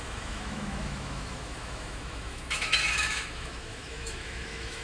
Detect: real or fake fake